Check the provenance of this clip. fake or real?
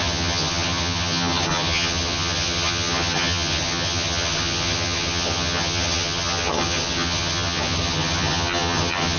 fake